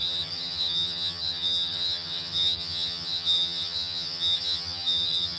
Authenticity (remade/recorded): remade